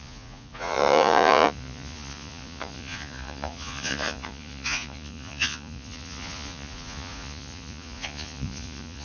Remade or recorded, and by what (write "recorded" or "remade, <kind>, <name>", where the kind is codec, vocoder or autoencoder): remade, vocoder, Vocos